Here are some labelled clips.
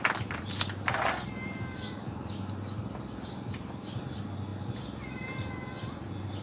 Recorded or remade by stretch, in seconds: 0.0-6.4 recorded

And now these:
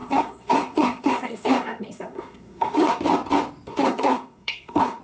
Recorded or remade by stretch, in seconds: 0.0-3.0 remade; 3.0-3.7 recorded; 3.7-5.0 remade

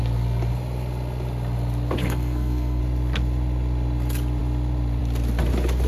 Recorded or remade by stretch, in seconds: 0.0-2.0 recorded; 2.0-2.8 remade; 2.8-5.9 recorded